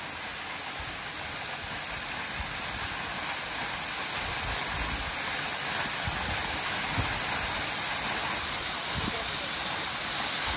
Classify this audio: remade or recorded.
recorded